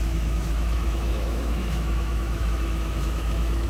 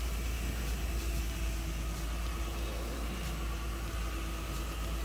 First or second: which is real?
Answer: second